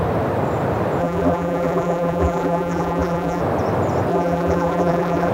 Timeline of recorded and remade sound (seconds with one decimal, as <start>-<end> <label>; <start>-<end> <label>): 0.0-1.0 recorded; 1.0-3.4 remade; 3.4-4.1 recorded; 4.1-5.3 remade